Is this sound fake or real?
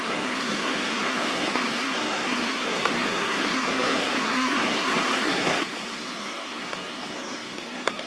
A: fake